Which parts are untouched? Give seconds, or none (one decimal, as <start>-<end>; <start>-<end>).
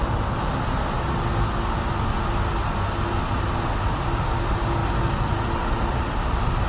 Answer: 0.0-6.7